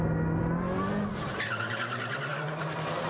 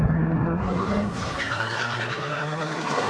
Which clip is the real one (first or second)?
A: first